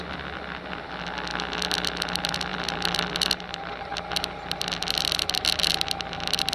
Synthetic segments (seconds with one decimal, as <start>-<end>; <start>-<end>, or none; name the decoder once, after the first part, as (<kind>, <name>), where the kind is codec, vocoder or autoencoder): 2.5-3.3 (vocoder, BigVGAN v2)